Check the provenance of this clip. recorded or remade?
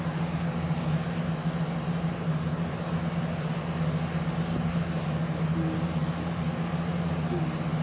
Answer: recorded